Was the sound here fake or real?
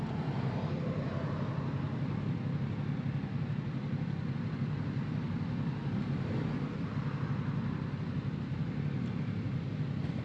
real